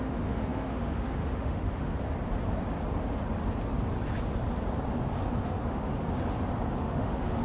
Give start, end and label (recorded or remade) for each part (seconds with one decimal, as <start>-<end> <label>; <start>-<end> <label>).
0.0-1.9 remade; 1.9-5.4 recorded; 5.4-5.9 remade; 5.9-6.7 recorded; 6.7-7.4 remade